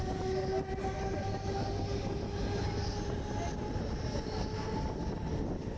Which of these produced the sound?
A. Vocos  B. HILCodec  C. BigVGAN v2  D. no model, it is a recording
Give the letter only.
D